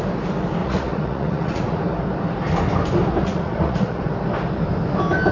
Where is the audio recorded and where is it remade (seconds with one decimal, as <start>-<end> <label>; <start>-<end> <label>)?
0.0-0.6 recorded; 0.6-1.8 remade; 1.8-3.2 recorded; 3.2-4.1 remade; 4.1-5.3 recorded